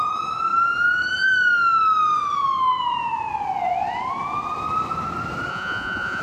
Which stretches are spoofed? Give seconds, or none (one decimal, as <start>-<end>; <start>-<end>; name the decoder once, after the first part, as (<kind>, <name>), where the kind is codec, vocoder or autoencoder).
5.5-6.2 (vocoder, Vocos)